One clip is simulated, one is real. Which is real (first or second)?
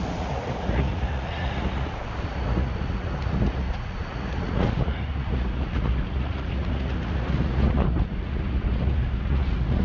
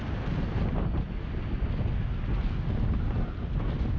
second